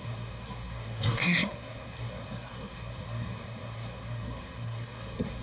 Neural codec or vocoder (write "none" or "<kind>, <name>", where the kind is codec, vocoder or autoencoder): codec, SNAC